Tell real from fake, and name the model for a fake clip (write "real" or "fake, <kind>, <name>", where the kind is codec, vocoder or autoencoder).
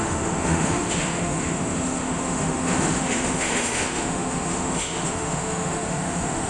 fake, autoencoder, DAC-VAE